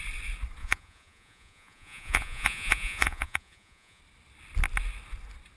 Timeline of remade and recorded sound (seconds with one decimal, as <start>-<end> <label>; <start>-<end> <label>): 0.0-0.6 recorded; 0.6-4.0 remade; 4.0-5.6 recorded